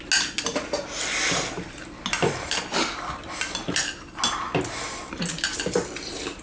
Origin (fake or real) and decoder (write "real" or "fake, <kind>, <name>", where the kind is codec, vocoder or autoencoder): real